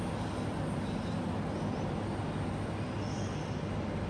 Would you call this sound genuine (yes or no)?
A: yes